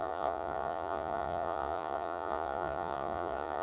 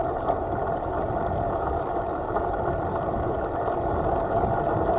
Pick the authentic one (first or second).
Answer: second